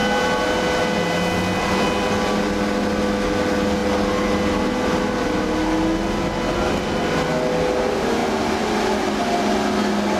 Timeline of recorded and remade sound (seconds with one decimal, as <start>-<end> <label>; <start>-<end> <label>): 0.0-10.2 recorded